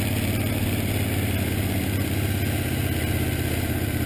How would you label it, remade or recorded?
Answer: recorded